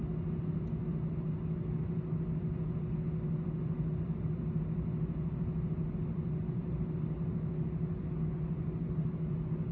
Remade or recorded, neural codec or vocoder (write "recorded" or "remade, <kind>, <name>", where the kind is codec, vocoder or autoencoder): recorded